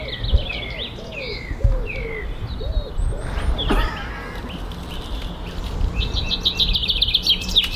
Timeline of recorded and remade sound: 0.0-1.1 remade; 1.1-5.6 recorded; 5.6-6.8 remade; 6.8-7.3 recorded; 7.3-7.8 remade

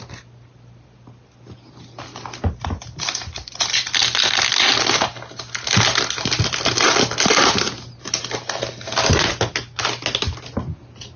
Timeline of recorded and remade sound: 0.0-11.2 recorded

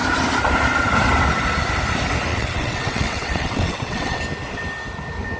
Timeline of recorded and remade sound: 0.0-2.3 recorded; 2.3-4.2 remade; 4.2-5.4 recorded